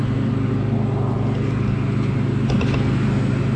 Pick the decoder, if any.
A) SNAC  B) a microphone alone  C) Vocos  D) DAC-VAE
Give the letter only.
B